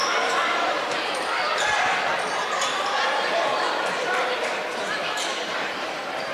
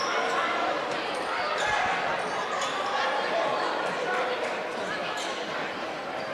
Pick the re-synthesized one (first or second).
first